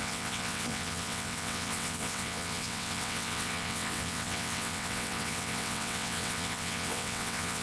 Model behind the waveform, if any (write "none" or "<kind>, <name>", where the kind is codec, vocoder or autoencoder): vocoder, WaveNeXt